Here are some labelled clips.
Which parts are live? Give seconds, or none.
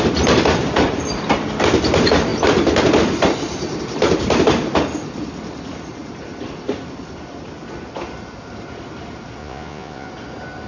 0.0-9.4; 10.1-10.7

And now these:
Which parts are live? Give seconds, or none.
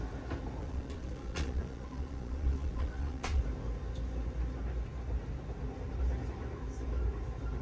0.0-0.6; 3.4-7.6